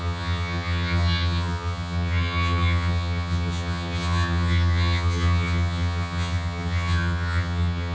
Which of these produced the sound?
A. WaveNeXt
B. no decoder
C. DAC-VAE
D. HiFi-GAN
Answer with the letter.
D